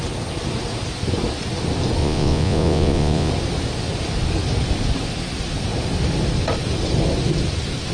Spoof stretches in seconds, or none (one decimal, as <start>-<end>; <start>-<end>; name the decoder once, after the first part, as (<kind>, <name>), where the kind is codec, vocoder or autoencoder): 2.0-3.3 (vocoder, Vocos)